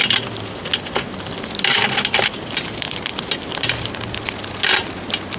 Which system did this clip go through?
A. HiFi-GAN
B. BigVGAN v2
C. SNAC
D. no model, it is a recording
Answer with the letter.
D